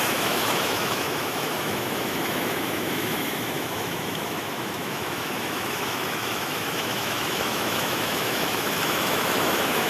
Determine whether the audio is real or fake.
fake